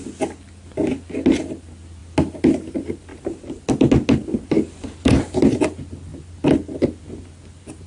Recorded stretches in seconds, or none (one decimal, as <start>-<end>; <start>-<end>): 0.0-7.9